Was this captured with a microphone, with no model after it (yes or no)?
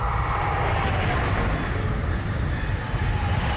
yes